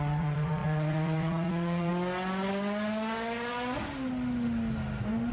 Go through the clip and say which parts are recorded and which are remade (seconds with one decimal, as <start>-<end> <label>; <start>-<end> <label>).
0.0-1.9 remade; 1.9-5.3 recorded